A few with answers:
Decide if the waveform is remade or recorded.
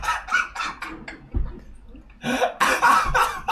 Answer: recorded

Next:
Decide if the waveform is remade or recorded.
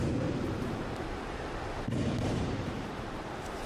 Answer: remade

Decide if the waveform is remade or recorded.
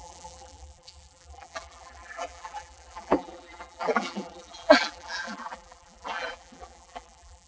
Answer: remade